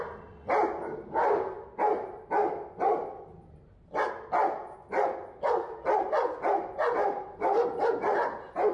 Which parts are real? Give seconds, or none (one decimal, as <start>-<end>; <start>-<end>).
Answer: 0.0-8.7